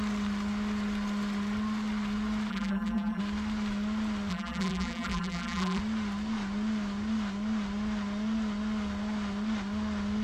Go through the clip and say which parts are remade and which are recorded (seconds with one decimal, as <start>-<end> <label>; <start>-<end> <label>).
0.0-2.5 recorded; 2.5-3.2 remade; 3.2-4.3 recorded; 4.3-5.8 remade; 5.8-10.2 recorded